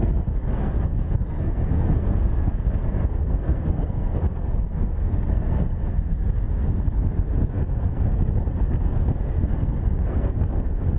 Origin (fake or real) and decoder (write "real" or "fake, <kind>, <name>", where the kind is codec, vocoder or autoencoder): fake, codec, SNAC